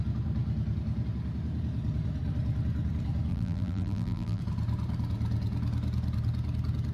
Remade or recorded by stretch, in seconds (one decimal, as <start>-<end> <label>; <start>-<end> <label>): 0.0-3.3 recorded; 3.3-4.4 remade; 4.4-6.9 recorded